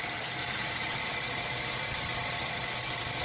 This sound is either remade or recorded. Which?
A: recorded